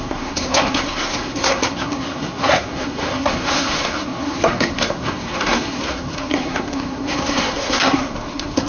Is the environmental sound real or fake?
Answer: fake